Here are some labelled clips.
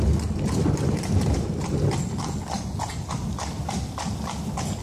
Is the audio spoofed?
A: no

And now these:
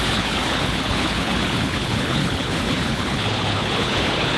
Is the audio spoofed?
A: yes